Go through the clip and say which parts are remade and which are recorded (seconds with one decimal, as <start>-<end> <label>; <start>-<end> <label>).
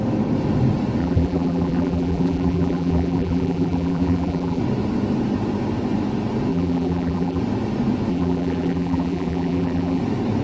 0.0-1.0 recorded; 1.0-4.6 remade; 4.6-6.5 recorded; 6.5-7.4 remade; 7.4-8.1 recorded; 8.1-10.0 remade; 10.0-10.4 recorded